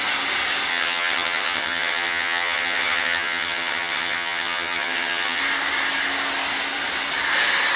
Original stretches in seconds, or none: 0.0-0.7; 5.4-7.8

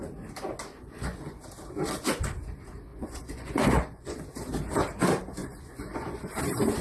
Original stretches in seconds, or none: 0.0-0.7; 1.4-2.9; 4.2-5.4; 6.3-6.8

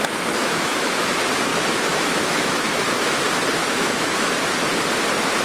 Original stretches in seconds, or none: 0.0-0.4; 1.1-1.5; 3.2-3.6; 4.3-5.4